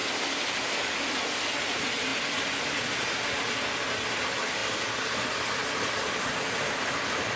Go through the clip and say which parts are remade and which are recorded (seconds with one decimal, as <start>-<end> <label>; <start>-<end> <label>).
0.0-0.8 remade; 0.8-7.4 recorded